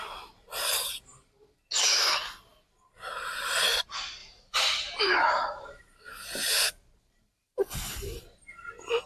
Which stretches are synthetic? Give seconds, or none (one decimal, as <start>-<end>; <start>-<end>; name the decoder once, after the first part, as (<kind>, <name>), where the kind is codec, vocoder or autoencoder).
4.2-7.6 (vocoder, BigVGAN v2)